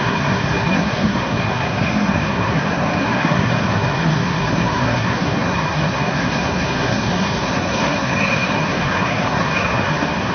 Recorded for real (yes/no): no